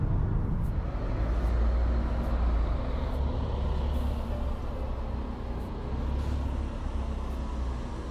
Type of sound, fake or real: real